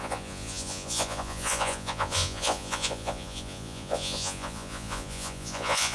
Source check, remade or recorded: remade